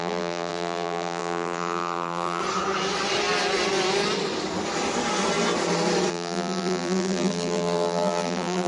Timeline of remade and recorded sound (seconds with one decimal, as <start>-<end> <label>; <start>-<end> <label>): 0.0-2.4 remade; 2.4-6.1 recorded; 6.1-8.7 remade